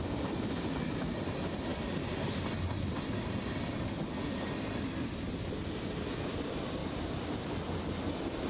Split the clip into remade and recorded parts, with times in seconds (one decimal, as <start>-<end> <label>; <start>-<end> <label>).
0.0-8.5 recorded